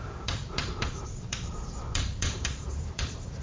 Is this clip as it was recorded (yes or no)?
no